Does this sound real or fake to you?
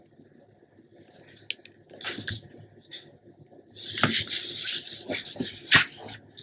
real